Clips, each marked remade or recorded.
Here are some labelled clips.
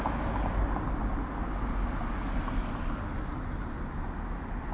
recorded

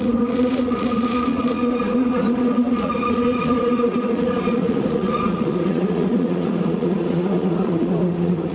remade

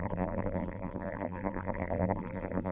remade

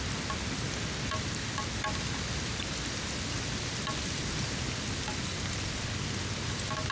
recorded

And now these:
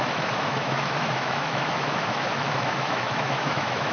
remade